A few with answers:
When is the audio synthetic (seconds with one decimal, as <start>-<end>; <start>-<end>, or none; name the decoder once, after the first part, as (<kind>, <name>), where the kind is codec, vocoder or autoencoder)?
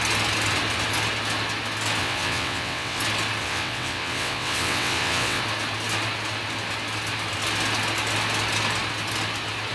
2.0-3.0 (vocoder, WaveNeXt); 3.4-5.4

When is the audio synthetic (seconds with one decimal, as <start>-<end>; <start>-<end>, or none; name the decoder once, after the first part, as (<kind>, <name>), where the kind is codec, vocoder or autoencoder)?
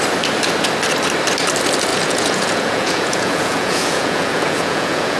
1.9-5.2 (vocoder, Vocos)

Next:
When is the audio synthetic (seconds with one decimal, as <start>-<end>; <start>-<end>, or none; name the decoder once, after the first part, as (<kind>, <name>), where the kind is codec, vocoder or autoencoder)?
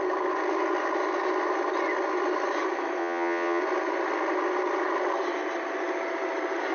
3.0-3.6 (vocoder, WaveNeXt)